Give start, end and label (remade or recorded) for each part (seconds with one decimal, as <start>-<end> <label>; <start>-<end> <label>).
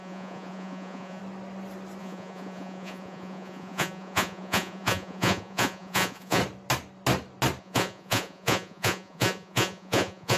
0.0-1.2 remade; 1.2-2.0 recorded; 2.0-6.4 remade; 6.4-7.6 recorded; 7.6-10.4 remade